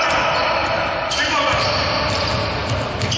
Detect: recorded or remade recorded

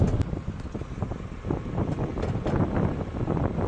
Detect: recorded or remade recorded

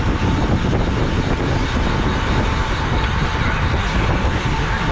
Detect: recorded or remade recorded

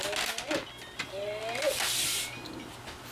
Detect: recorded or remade recorded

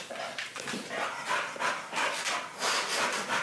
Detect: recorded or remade remade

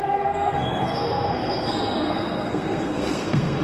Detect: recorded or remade remade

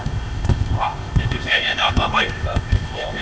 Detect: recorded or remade remade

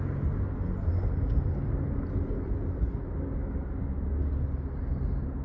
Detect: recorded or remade recorded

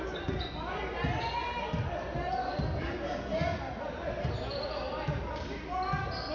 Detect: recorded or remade recorded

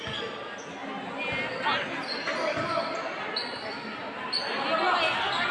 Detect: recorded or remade recorded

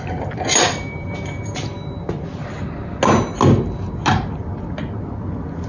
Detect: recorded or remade recorded